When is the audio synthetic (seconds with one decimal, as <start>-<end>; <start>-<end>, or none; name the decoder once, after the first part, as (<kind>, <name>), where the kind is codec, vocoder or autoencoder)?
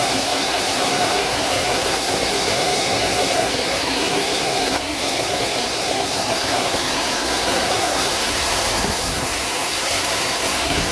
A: 0.0-10.9 (codec, SNAC)